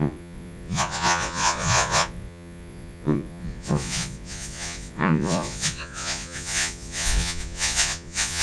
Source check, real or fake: fake